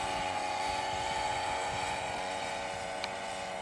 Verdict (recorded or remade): remade